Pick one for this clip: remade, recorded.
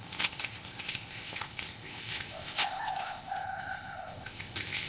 remade